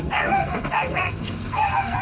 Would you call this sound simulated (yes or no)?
yes